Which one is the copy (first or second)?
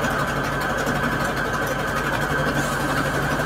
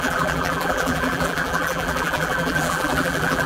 second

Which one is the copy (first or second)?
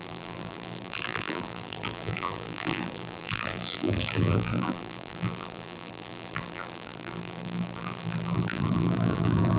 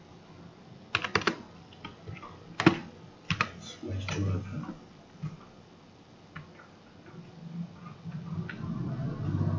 first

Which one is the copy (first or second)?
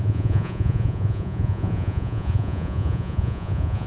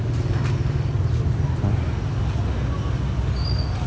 first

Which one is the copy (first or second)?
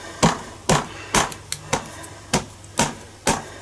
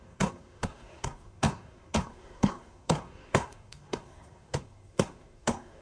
second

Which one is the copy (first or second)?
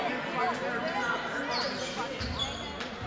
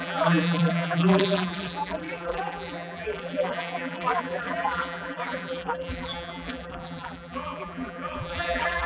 second